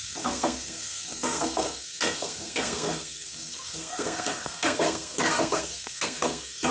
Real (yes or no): no